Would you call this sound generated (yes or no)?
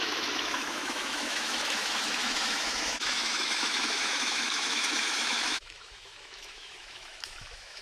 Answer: yes